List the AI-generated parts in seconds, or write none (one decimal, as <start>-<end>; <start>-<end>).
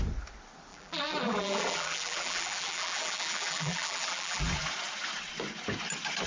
0.7-4.5